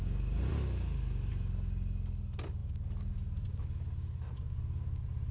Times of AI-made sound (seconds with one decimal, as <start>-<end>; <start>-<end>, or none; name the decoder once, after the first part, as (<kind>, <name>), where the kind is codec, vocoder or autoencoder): none